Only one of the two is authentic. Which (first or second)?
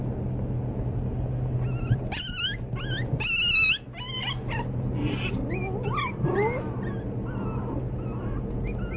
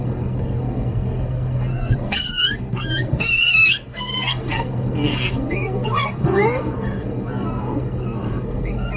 first